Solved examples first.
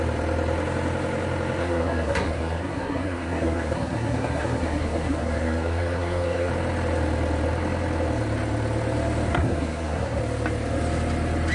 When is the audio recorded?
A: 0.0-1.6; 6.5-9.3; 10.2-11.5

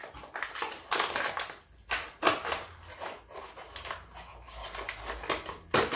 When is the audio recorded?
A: 0.0-6.0

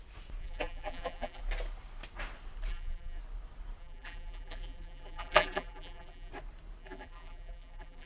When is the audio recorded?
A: 0.0-0.4; 1.4-2.7; 3.2-3.8; 6.3-6.8

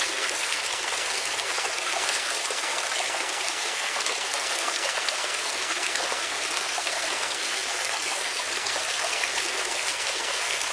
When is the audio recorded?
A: none

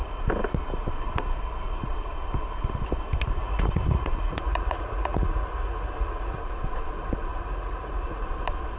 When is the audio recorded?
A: 0.0-3.4; 6.4-7.3; 8.2-8.8

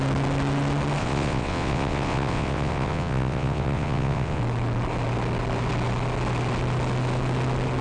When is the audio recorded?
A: 0.0-1.0; 4.4-7.8

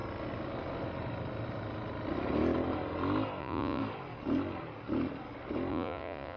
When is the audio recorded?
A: 0.0-3.4; 3.8-5.7